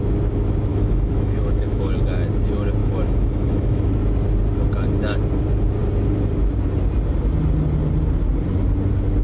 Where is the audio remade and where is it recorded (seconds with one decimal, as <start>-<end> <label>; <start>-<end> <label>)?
0.0-0.7 recorded; 0.7-1.9 remade; 1.9-2.8 recorded; 2.8-3.9 remade; 3.9-9.2 recorded